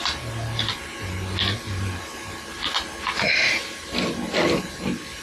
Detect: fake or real real